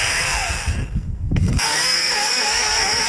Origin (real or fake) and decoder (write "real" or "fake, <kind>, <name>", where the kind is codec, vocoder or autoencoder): fake, codec, SNAC